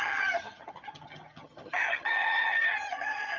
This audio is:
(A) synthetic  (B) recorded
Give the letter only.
A